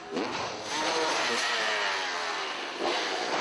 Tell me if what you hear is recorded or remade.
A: recorded